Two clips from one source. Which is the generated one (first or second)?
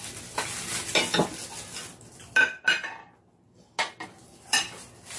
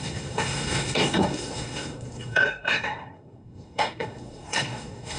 second